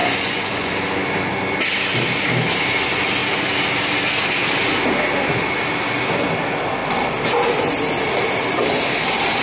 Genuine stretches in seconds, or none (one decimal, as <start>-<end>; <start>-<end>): 0.7-9.4